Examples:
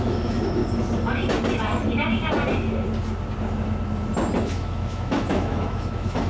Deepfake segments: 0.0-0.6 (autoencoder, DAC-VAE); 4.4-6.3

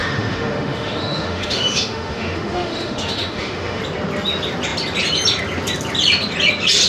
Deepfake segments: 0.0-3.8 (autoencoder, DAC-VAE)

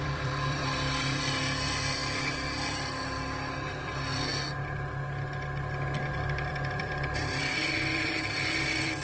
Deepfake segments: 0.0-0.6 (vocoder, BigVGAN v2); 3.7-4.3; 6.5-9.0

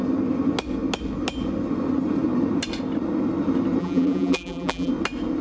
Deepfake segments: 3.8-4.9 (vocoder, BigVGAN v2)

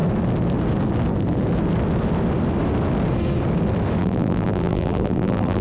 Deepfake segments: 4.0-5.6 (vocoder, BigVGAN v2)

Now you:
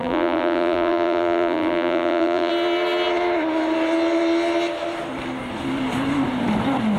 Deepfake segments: 0.0-2.5 (vocoder, BigVGAN v2)

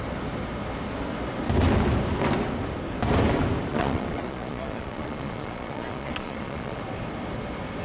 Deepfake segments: 3.7-6.8 (vocoder, Vocos)

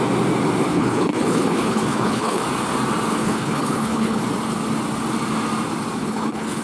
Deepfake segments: 0.7-2.4 (codec, HILCodec); 3.1-4.2; 6.0-6.6